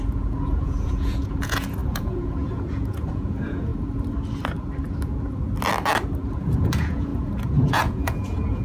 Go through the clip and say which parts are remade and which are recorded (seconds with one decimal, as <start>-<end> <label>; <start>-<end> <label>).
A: 0.0-3.7 remade; 3.7-6.3 recorded; 6.3-8.6 remade